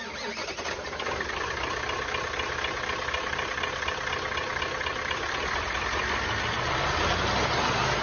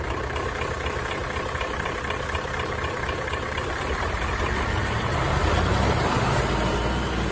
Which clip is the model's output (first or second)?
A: second